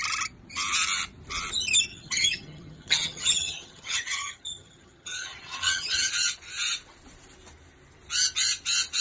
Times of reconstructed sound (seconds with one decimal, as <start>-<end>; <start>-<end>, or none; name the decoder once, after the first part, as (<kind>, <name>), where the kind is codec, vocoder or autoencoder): 1.9-6.1 (vocoder, HiFi-GAN)